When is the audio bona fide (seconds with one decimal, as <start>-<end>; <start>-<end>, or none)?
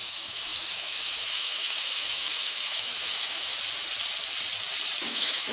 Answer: 3.5-5.0